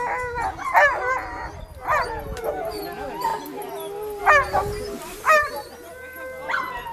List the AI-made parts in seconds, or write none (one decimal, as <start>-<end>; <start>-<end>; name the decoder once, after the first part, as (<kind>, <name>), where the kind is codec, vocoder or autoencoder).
2.3-2.8 (vocoder, BigVGAN v2); 5.0-5.9